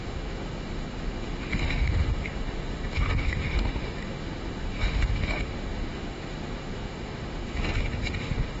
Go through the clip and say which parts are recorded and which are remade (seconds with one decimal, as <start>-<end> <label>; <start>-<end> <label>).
0.0-8.6 remade